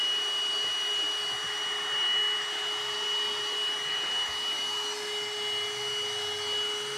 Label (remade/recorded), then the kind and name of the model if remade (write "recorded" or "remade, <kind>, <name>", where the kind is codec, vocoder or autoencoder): recorded